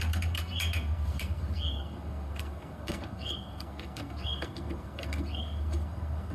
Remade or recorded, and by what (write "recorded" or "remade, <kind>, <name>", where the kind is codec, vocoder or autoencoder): remade, codec, SNAC